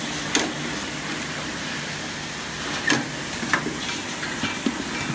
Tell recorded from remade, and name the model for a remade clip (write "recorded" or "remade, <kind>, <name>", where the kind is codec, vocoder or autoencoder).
recorded